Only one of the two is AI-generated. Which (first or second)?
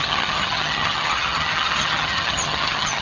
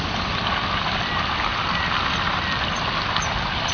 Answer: first